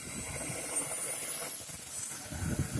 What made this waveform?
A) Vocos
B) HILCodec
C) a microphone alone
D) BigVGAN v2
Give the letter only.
C